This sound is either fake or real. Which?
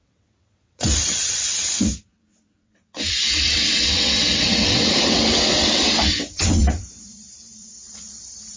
fake